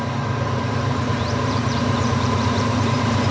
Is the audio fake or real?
fake